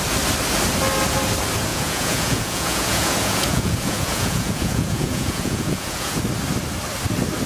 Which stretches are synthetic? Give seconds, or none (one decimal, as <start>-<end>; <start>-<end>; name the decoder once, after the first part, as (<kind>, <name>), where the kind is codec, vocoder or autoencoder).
1.7-6.2 (vocoder, Vocos)